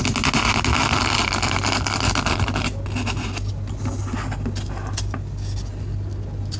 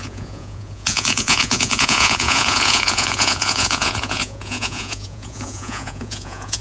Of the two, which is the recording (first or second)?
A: first